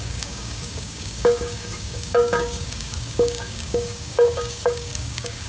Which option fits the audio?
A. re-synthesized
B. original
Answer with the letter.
A